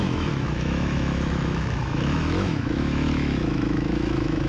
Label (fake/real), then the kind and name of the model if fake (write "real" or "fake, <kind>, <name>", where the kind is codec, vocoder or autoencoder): fake, autoencoder, DAC-VAE